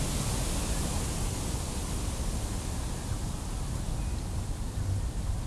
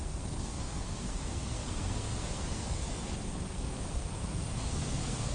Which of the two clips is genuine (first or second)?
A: first